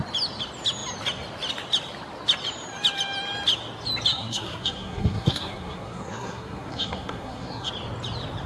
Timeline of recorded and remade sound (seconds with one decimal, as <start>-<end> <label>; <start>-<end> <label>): 0.0-4.1 recorded; 4.1-7.7 remade; 7.7-8.5 recorded